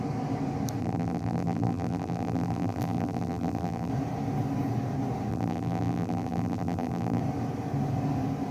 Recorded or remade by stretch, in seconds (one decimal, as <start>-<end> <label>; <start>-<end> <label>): 0.0-0.8 recorded; 0.8-3.9 remade; 3.9-5.3 recorded; 5.3-7.2 remade; 7.2-8.5 recorded